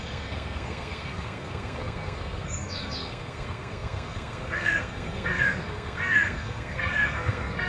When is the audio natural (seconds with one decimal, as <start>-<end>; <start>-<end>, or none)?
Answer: none